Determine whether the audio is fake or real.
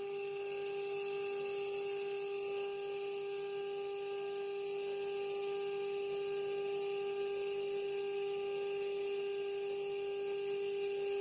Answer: real